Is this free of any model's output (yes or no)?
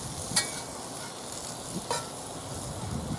yes